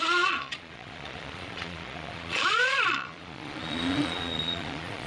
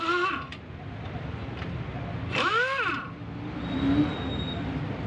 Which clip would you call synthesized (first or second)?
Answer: first